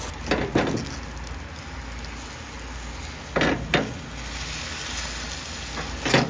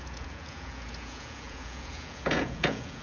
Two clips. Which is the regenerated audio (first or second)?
second